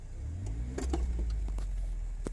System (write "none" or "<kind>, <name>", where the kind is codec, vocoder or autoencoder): none